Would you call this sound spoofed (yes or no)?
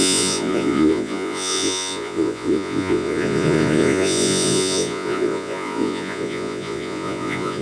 yes